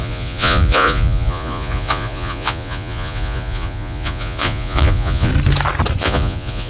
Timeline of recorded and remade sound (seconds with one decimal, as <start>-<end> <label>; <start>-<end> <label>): 0.0-5.3 remade; 5.3-6.0 recorded; 6.0-6.7 remade